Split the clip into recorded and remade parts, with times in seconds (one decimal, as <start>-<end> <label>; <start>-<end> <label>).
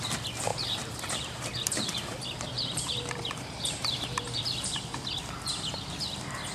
0.0-0.5 recorded; 0.5-4.4 remade; 4.4-6.5 recorded